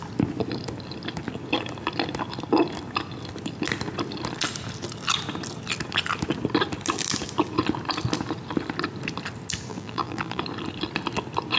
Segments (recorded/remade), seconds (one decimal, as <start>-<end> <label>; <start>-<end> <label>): 0.0-9.7 recorded; 9.7-10.4 remade; 10.4-11.6 recorded